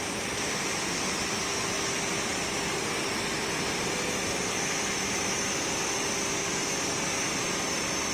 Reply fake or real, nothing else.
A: real